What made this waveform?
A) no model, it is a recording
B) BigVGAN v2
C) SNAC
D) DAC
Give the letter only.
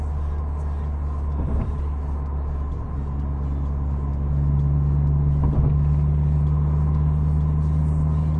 A